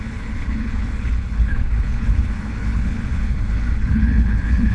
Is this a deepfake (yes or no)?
yes